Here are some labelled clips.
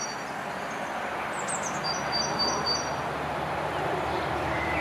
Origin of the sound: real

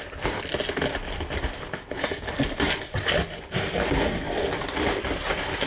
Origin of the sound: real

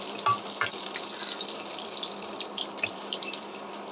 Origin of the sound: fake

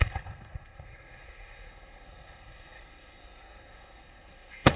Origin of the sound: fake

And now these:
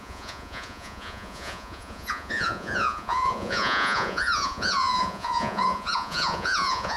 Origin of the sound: fake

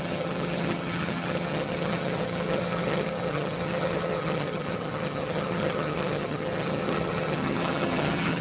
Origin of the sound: fake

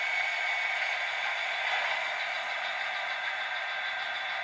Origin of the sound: real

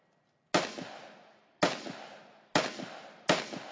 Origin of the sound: real